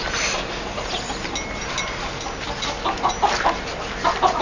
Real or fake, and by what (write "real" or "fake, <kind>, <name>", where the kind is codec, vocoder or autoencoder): real